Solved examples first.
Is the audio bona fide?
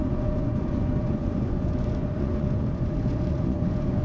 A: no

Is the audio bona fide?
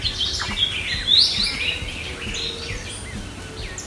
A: yes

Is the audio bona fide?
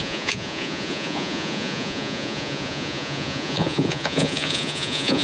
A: no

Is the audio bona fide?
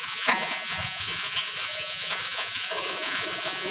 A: no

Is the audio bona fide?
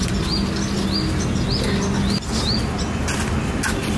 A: yes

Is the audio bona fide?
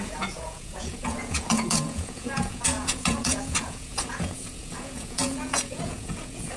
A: no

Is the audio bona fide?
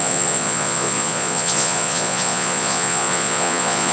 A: no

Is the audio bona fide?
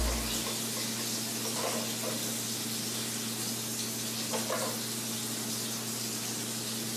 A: yes